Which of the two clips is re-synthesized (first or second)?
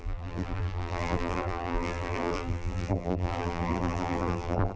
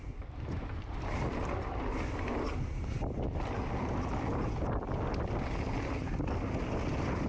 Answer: first